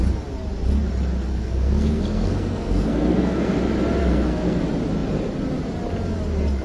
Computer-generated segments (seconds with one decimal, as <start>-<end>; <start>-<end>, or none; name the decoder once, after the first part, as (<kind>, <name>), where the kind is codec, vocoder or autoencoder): 1.3-3.6 (codec, SNAC); 4.0-4.6